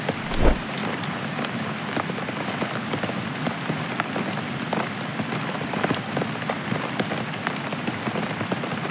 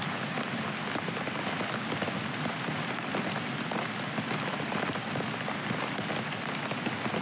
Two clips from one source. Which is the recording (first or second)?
second